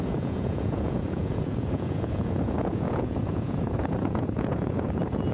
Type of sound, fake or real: fake